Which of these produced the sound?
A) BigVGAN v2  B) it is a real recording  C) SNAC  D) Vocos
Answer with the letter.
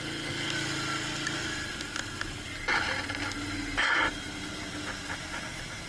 B